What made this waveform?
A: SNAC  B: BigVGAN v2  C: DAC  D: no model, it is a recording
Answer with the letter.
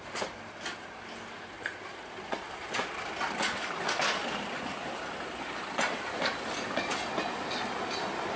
D